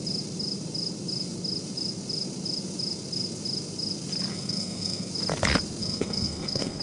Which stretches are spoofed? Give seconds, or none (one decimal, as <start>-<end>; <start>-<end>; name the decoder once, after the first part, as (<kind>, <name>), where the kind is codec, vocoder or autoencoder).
4.3-5.1 (codec, SNAC); 5.8-6.8